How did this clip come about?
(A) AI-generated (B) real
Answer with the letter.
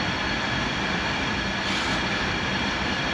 A